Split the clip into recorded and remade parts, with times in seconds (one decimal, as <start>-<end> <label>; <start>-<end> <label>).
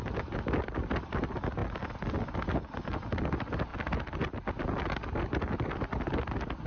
0.0-6.7 recorded